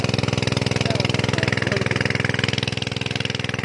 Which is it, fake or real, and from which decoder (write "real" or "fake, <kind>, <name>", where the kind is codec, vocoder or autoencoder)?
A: real